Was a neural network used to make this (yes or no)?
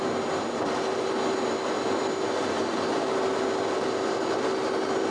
no